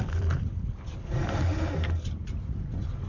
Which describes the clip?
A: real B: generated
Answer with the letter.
A